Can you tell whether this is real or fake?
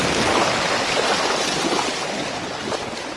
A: real